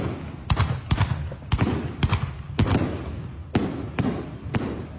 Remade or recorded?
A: recorded